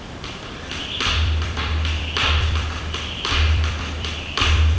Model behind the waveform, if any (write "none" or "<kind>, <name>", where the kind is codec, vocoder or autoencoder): vocoder, BigVGAN v2